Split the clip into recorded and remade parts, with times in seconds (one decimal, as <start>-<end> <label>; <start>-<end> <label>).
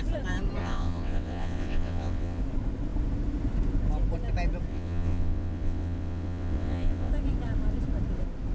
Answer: 0.0-0.6 recorded; 0.6-2.4 remade; 2.4-4.7 recorded; 4.7-7.1 remade; 7.1-8.5 recorded